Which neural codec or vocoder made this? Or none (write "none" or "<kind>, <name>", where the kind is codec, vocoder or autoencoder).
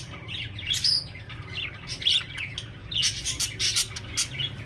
none